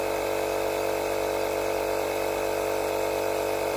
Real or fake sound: real